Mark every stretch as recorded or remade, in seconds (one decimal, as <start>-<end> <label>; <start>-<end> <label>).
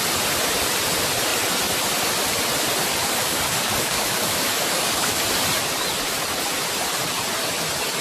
0.0-2.9 recorded; 2.9-5.2 remade; 5.2-8.0 recorded